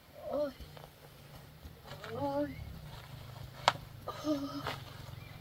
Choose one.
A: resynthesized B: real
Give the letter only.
B